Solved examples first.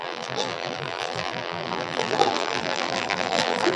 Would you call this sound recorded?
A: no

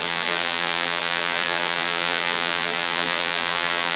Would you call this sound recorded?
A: no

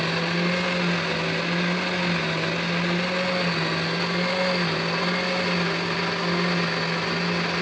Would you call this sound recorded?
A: yes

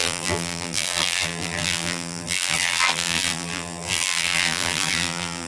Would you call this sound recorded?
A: no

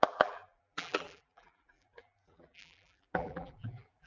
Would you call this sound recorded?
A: no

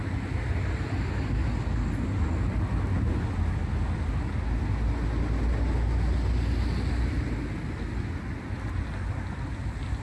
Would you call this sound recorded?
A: yes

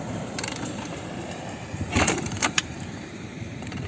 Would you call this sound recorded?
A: no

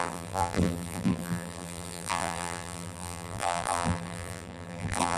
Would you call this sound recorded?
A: no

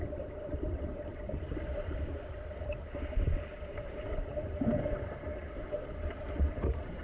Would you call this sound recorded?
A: no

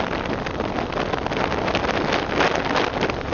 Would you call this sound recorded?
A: yes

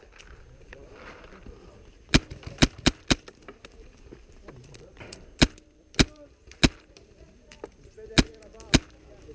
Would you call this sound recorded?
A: no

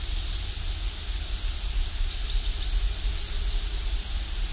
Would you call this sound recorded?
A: yes